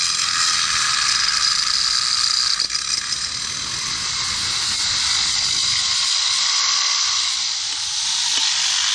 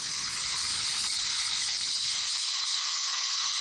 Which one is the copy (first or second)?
second